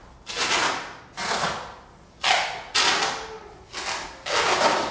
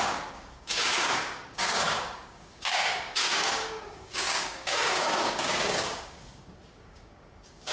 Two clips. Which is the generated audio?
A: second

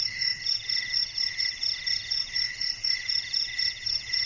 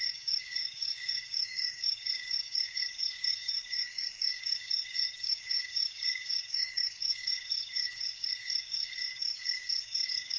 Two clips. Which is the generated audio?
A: second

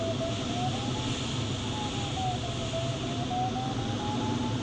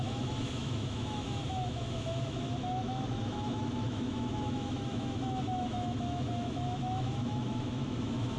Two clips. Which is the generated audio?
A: second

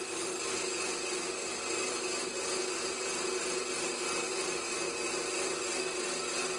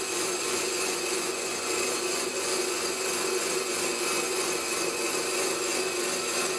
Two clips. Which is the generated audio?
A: second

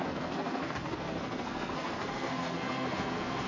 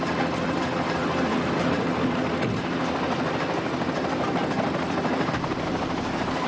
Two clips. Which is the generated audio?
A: first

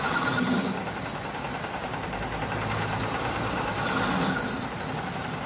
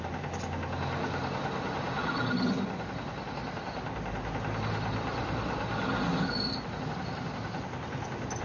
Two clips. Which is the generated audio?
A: first